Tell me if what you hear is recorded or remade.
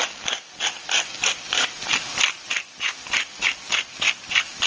recorded